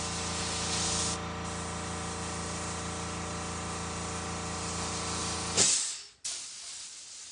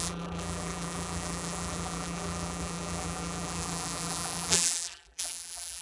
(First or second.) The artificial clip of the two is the second